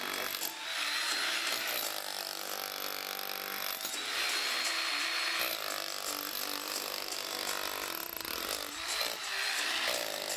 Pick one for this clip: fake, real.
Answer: real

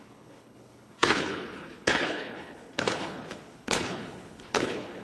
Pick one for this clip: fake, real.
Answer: fake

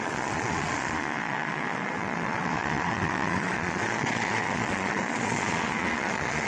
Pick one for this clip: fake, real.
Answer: fake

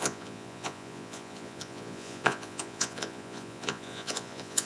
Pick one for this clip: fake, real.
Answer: fake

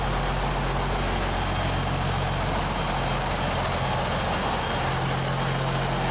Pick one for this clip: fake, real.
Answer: real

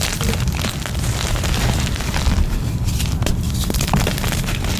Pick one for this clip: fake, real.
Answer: fake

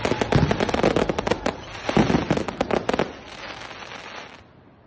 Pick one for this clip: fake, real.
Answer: real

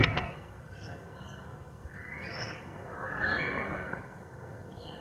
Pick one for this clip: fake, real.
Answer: fake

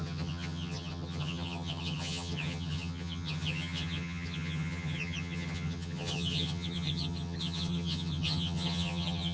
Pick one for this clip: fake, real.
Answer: fake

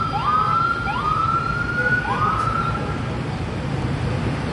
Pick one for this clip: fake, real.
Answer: real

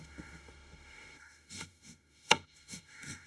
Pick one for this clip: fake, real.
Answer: fake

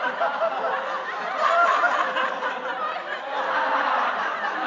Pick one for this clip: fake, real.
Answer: fake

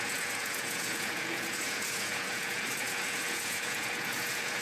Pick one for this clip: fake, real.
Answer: fake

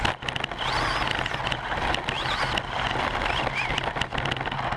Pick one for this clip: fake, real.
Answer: real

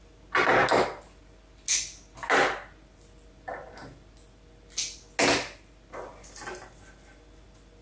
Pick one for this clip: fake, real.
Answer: real